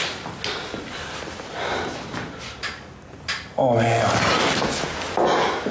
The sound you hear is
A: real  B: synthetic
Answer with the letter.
A